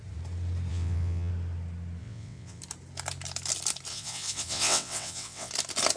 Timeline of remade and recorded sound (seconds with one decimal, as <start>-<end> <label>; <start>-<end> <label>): 0.0-0.7 recorded; 0.7-1.3 remade; 1.3-2.0 recorded; 2.0-2.6 remade; 2.6-3.9 recorded; 3.9-5.5 remade; 5.5-6.0 recorded